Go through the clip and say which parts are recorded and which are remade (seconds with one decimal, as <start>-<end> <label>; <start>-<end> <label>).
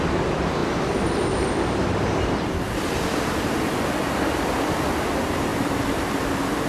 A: 0.0-6.7 remade